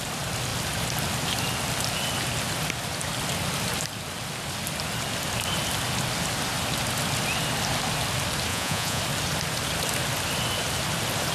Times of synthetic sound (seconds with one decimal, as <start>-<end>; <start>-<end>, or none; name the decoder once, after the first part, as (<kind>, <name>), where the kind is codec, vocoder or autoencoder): 8.5-9.0 (vocoder, Vocos)